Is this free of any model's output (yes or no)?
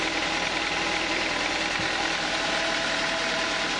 yes